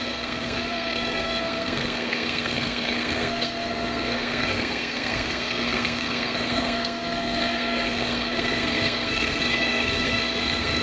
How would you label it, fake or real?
fake